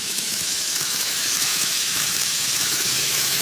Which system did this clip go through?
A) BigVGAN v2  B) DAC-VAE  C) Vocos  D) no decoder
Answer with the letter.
B